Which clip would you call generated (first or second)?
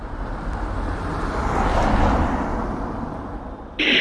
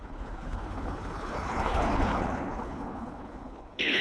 second